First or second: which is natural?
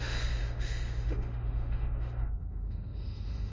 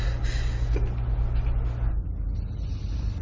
second